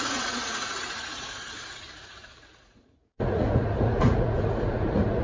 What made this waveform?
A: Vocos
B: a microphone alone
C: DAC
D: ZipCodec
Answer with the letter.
A